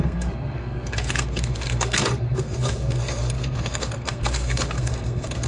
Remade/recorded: remade